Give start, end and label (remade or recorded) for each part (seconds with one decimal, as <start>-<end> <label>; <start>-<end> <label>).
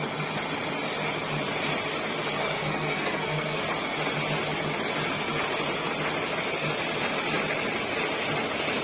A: 0.0-2.4 recorded; 2.4-3.6 remade; 3.6-8.8 recorded